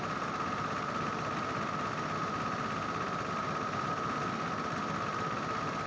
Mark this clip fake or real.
real